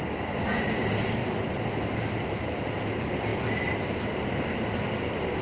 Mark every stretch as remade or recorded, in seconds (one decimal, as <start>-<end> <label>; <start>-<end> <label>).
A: 0.0-5.4 recorded